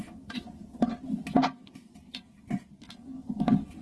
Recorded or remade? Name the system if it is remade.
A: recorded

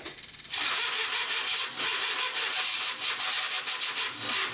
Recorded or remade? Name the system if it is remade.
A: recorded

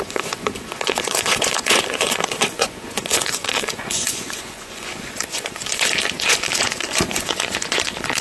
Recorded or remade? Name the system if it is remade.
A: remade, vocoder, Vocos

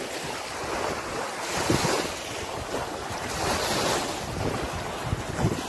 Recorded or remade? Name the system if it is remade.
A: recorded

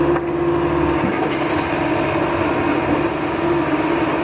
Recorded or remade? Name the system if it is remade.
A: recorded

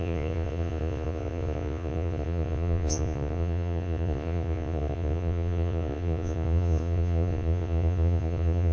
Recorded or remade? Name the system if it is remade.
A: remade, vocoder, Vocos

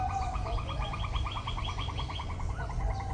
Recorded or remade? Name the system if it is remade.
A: remade, vocoder, Vocos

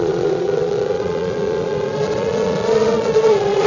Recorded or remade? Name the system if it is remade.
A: remade, vocoder, Vocos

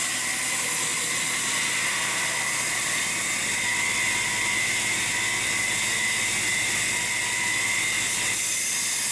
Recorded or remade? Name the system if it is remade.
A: recorded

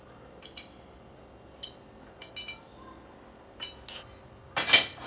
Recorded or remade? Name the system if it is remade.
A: recorded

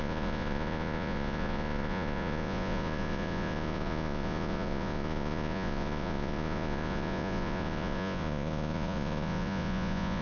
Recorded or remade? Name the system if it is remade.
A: remade, vocoder, Vocos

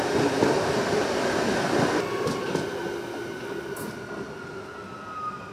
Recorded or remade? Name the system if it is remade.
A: recorded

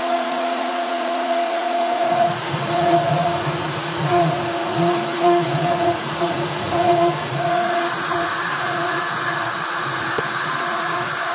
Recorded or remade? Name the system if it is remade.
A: remade, vocoder, Vocos